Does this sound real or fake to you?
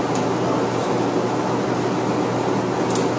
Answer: real